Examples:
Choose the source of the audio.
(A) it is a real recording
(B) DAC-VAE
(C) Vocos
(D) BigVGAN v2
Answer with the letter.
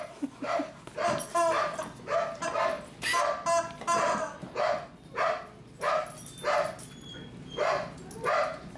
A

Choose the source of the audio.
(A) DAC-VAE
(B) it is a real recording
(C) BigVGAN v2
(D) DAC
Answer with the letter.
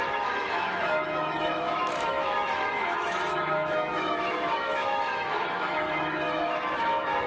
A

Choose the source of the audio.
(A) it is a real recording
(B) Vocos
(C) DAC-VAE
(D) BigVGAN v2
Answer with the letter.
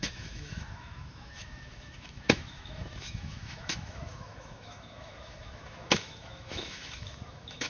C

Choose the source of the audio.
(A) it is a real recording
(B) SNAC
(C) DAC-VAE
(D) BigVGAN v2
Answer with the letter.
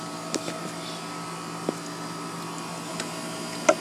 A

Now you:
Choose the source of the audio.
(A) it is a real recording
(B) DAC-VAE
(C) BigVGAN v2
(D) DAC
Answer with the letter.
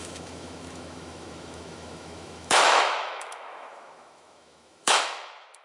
B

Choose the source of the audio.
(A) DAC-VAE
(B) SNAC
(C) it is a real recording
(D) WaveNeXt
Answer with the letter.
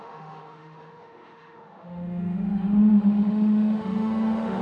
A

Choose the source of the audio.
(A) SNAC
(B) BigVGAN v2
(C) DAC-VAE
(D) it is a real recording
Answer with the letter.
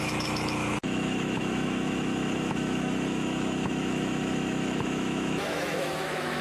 C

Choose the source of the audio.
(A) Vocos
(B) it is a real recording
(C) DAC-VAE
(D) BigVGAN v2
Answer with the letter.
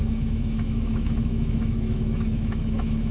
C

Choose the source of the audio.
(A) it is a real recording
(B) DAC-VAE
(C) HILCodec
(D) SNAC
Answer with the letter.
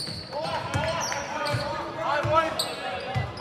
A